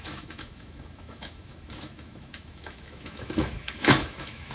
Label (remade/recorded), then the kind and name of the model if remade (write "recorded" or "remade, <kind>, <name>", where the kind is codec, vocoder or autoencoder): remade, autoencoder, DAC-VAE